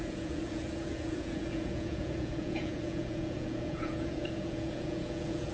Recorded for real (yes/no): no